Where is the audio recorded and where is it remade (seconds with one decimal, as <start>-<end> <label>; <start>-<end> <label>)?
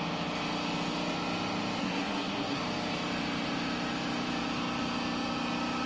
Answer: 0.0-1.8 recorded; 1.8-2.6 remade; 2.6-5.9 recorded